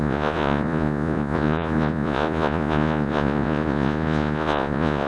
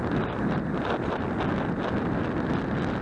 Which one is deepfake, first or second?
first